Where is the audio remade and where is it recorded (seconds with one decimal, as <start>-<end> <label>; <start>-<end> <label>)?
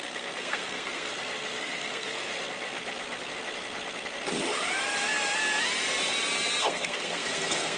0.0-1.1 remade; 1.1-1.6 recorded; 1.6-2.3 remade; 2.3-6.6 recorded; 6.6-7.8 remade